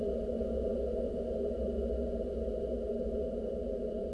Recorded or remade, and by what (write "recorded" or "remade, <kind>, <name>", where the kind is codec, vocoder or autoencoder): recorded